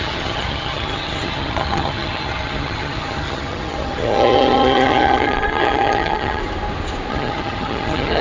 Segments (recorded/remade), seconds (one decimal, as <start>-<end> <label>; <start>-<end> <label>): 0.0-6.4 remade; 6.4-7.1 recorded; 7.1-8.2 remade